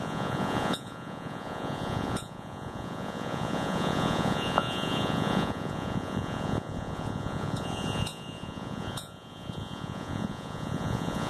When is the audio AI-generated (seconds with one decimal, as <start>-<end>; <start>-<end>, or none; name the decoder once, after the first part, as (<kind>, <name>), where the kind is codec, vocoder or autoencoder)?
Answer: 0.0-11.3 (vocoder, Vocos)